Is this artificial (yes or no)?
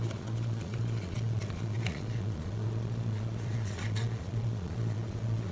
yes